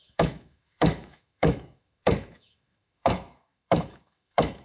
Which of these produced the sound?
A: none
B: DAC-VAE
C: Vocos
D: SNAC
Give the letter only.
B